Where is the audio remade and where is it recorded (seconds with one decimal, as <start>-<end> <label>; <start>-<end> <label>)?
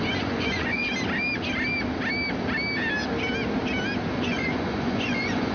0.0-0.8 remade; 0.8-4.1 recorded; 4.1-5.5 remade